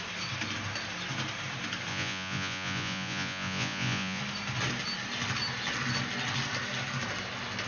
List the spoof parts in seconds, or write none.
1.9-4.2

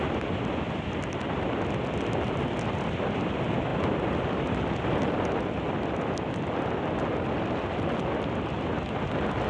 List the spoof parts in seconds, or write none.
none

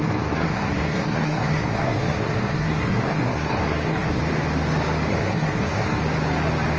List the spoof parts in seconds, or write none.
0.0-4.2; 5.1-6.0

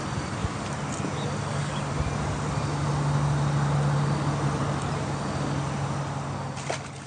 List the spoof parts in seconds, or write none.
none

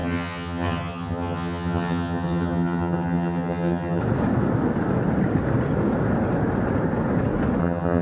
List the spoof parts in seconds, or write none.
0.0-4.0; 7.6-8.0

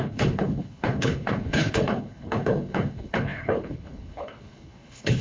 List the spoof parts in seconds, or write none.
0.0-5.2